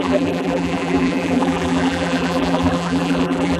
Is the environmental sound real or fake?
fake